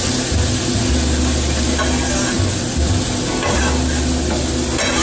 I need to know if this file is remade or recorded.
recorded